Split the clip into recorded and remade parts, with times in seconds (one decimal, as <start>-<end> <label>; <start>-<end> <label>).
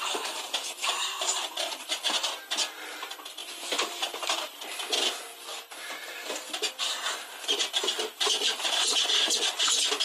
0.0-10.0 recorded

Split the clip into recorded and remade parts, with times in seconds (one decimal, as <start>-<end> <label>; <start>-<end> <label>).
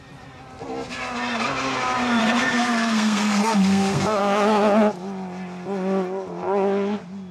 0.0-2.2 recorded; 2.2-4.2 remade; 4.2-7.3 recorded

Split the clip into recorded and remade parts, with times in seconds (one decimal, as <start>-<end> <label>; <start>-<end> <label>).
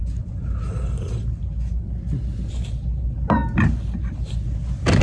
0.0-5.0 recorded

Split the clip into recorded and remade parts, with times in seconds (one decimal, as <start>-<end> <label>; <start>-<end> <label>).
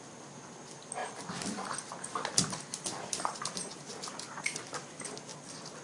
0.0-4.1 recorded; 4.1-4.6 remade; 4.6-5.8 recorded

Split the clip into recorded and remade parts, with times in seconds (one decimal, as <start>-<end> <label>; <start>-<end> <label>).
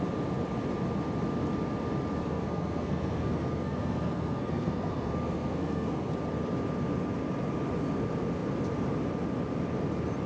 0.0-2.2 recorded; 2.2-6.1 remade; 6.1-10.3 recorded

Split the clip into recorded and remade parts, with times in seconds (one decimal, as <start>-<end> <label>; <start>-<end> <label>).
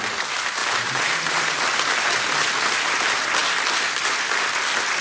0.0-0.6 recorded; 0.6-1.6 remade; 1.6-5.0 recorded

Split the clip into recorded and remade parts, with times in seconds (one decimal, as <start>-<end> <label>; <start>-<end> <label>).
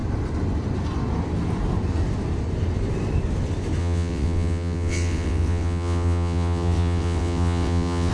0.0-3.8 recorded; 3.8-8.1 remade